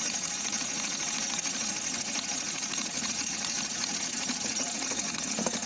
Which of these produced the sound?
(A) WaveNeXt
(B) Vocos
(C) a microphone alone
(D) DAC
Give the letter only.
B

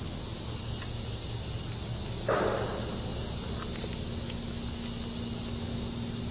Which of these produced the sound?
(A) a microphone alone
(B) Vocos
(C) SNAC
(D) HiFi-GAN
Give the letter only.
A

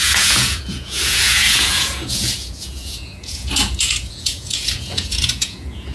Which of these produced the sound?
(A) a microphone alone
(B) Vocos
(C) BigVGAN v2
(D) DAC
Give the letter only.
B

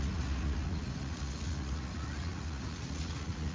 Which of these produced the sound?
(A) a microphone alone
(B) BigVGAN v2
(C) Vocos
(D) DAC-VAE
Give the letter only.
C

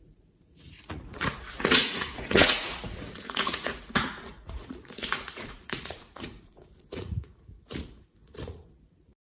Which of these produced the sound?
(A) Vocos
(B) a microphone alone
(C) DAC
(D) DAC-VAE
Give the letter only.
A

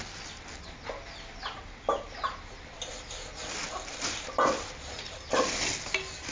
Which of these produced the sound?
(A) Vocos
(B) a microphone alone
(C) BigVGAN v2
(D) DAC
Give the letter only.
B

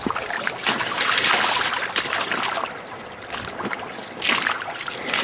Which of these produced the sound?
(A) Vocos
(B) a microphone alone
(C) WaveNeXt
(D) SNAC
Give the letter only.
B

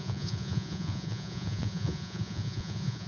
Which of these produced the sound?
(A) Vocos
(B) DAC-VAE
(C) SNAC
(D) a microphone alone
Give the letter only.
A